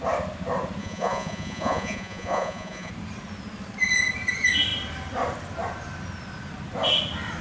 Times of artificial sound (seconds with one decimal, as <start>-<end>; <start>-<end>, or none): 0.8-2.9

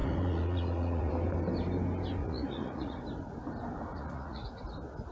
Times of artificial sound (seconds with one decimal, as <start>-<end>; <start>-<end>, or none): 0.0-1.1; 2.2-3.0; 3.9-4.6

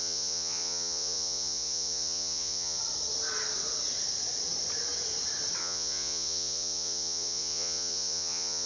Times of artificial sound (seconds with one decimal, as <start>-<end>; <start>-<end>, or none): 0.0-2.8; 5.6-8.7

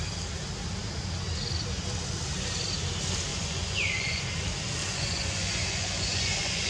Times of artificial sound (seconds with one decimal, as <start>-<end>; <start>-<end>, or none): 3.3-4.2; 4.8-6.7

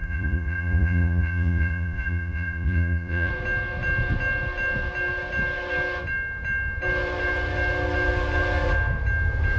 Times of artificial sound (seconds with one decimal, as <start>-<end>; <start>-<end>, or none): 0.0-3.3

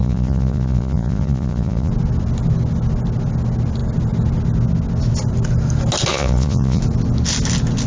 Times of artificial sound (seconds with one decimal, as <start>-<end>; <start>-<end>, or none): 0.0-1.9; 6.1-6.8